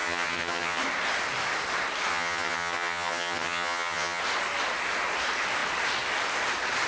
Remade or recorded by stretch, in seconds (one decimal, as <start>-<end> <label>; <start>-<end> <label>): 0.0-0.8 remade; 0.8-2.1 recorded; 2.1-4.2 remade; 4.2-6.9 recorded

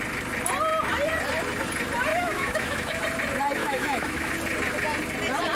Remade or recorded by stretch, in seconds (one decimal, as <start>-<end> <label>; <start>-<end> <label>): 0.0-2.1 recorded; 2.1-3.0 remade; 3.0-3.6 recorded; 3.6-4.3 remade; 4.3-5.5 recorded

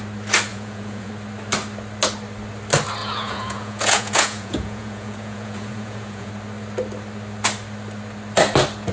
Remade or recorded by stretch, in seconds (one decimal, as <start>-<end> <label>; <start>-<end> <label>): 0.0-0.5 recorded; 0.5-1.1 remade; 1.1-3.0 recorded; 3.0-6.3 remade; 6.3-8.9 recorded

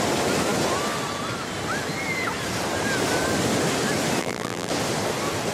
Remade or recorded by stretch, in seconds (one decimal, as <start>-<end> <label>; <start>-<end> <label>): 0.0-4.2 recorded; 4.2-4.7 remade; 4.7-5.5 recorded

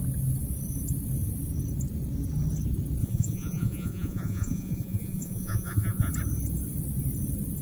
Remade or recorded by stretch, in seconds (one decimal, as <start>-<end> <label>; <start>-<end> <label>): 0.0-3.0 recorded; 3.0-6.1 remade; 6.1-7.6 recorded

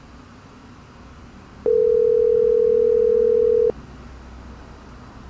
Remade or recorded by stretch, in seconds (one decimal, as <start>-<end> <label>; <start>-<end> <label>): 0.0-5.3 recorded

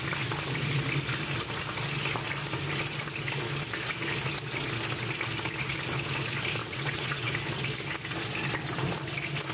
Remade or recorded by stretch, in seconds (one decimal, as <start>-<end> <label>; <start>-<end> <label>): 0.0-6.6 recorded; 6.6-7.3 remade; 7.3-9.5 recorded